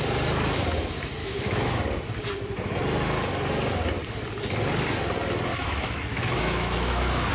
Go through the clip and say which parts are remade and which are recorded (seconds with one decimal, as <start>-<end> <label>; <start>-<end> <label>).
0.0-1.2 recorded; 1.2-1.8 remade; 1.8-5.5 recorded; 5.5-7.3 remade